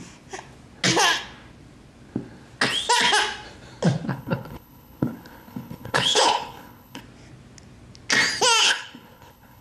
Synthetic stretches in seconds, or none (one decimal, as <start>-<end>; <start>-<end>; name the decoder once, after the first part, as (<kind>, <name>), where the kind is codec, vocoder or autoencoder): 4.1-7.0 (codec, HILCodec); 8.6-9.6